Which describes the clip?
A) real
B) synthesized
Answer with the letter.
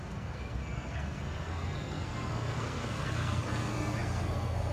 B